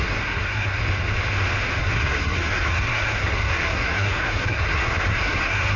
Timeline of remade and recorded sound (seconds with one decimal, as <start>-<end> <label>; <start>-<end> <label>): 0.0-0.8 remade; 0.8-1.8 recorded; 1.8-5.8 remade